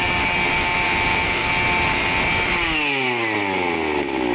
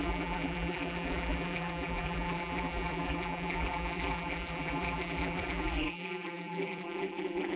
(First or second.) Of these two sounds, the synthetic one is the second